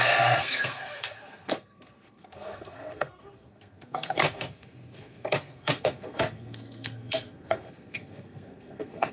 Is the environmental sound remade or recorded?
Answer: remade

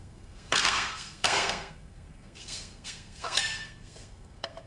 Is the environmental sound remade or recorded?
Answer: remade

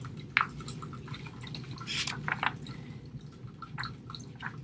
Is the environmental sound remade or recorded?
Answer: recorded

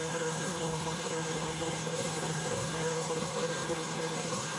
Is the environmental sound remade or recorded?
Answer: remade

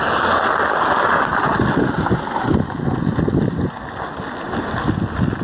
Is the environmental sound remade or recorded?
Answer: recorded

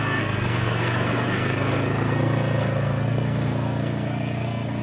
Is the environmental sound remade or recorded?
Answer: remade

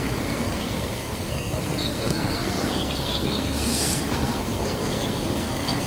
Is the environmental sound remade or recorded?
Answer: remade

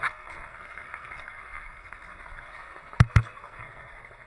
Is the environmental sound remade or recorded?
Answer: remade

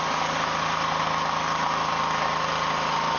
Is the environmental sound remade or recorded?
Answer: recorded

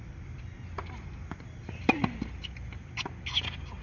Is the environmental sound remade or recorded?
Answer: recorded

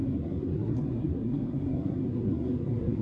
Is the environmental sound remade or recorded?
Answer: remade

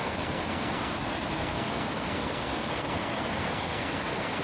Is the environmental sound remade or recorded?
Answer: remade